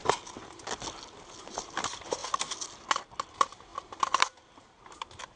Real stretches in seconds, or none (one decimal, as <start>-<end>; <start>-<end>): 0.0-1.5; 2.2-3.3